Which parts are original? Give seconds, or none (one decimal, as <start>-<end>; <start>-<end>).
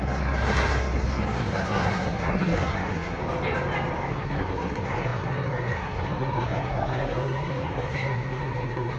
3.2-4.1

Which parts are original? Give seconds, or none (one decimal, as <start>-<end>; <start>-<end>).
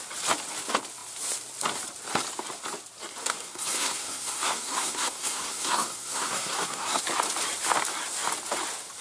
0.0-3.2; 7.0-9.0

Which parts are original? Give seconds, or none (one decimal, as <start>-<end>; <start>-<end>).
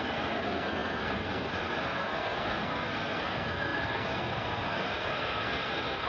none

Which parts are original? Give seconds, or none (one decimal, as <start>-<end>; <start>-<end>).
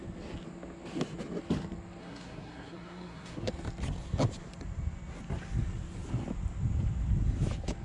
0.0-2.0; 3.5-7.8